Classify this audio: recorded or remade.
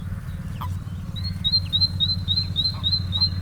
recorded